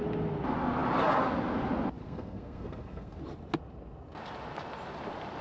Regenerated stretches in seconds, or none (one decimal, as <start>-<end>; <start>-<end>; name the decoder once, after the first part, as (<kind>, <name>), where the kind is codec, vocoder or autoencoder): 2.0-3.2 (codec, SNAC)